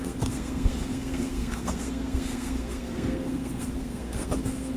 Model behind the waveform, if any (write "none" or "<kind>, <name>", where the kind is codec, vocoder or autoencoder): codec, SNAC